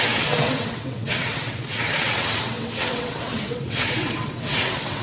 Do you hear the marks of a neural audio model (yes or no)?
yes